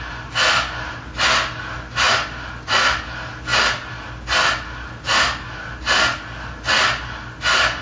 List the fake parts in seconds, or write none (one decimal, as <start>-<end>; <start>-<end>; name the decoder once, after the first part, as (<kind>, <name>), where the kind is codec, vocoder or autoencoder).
none

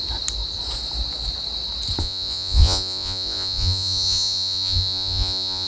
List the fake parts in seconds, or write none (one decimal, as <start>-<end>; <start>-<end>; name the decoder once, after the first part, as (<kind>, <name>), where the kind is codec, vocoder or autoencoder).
2.0-5.7 (vocoder, Vocos)

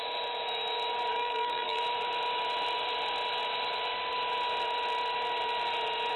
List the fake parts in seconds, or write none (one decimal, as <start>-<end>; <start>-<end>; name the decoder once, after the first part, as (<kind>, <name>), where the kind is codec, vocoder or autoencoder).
1.1-1.8 (codec, SNAC)

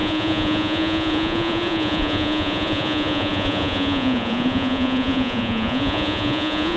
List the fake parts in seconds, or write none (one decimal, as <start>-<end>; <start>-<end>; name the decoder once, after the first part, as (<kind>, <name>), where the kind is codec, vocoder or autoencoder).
0.0-6.8 (vocoder, Vocos)

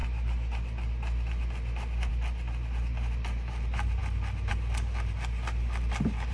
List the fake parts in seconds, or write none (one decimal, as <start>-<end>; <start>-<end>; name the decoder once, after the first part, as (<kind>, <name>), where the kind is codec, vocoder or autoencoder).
none

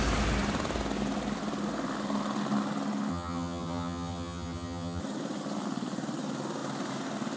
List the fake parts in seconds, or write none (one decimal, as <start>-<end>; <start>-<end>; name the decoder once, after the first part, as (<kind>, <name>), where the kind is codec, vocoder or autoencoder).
3.1-5.0 (vocoder, HiFi-GAN)

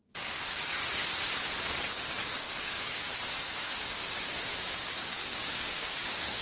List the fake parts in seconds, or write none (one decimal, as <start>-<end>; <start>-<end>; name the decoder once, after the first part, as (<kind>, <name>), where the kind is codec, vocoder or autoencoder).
0.0-0.8 (codec, DAC); 1.9-3.2; 3.8-6.4